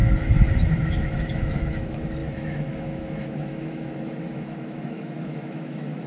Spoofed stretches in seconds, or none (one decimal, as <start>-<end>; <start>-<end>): 0.0-6.1